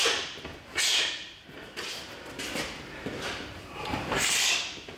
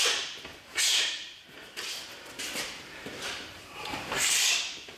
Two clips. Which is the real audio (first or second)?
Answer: first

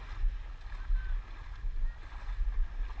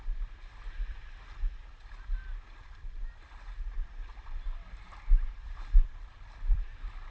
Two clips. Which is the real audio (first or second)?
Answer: first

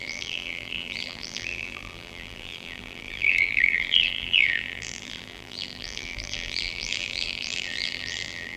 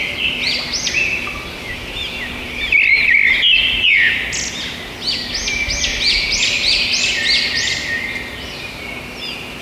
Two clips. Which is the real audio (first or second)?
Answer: second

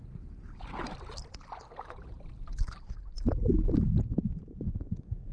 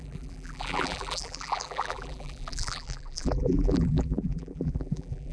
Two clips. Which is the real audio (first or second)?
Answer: first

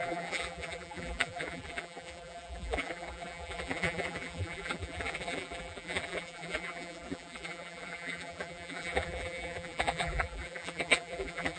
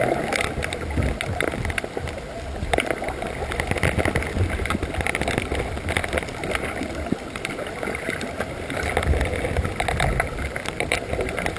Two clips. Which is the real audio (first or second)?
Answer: second